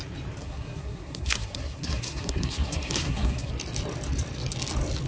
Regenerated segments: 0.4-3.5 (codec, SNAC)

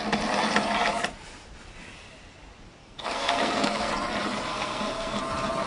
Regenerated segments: 2.8-3.9 (codec, SNAC); 4.5-5.2

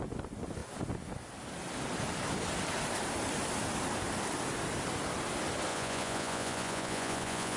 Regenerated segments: 5.7-7.6 (vocoder, Vocos)